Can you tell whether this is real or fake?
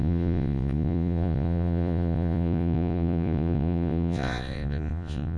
fake